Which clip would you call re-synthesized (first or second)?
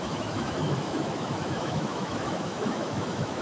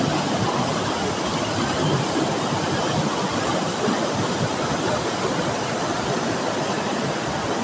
first